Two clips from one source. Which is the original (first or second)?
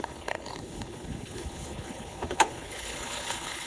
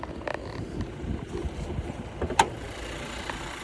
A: second